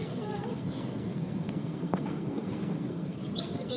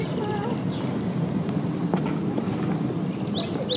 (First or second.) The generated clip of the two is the first